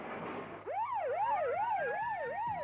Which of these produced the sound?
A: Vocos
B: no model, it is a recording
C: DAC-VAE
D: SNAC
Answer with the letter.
B